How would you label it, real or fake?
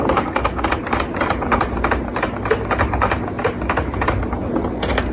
real